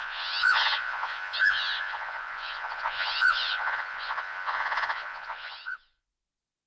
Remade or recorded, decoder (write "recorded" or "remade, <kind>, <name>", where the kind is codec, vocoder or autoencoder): remade, vocoder, Vocos